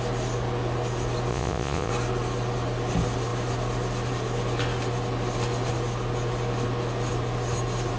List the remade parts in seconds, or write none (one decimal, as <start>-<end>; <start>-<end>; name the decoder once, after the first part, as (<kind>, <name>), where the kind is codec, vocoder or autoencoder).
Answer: 1.3-1.9 (vocoder, Vocos)